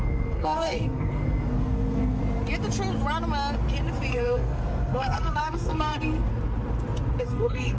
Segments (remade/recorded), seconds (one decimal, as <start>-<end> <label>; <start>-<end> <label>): 0.0-2.2 remade; 2.2-4.1 recorded; 4.1-6.3 remade; 6.3-7.2 recorded; 7.2-7.8 remade